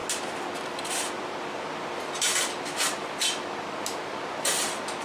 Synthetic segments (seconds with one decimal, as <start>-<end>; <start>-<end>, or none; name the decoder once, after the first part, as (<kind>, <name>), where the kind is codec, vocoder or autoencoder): none